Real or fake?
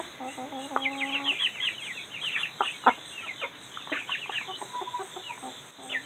real